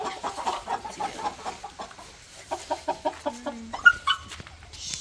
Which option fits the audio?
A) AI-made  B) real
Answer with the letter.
B